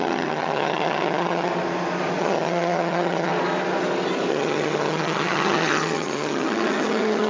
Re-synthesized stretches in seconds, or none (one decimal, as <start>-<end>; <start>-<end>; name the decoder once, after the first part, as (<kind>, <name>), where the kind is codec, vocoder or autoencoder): 0.0-1.5 (vocoder, HiFi-GAN); 2.2-3.3; 4.3-7.3